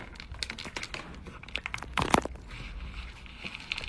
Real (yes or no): yes